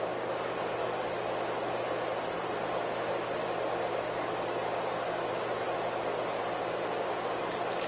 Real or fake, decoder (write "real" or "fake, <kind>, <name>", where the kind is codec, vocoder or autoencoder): real